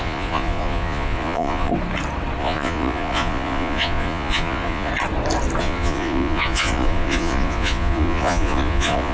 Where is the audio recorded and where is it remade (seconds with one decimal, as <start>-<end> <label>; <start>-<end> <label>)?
0.0-1.7 remade; 1.7-2.4 recorded; 2.4-4.9 remade; 4.9-5.6 recorded; 5.6-9.1 remade